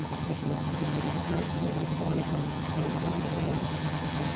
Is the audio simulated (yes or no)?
yes